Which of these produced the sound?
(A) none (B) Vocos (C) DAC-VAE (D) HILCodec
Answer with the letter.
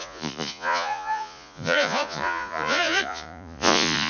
B